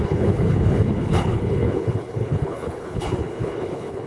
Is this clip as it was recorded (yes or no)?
no